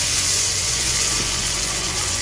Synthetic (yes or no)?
yes